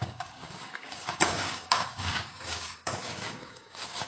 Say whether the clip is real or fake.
fake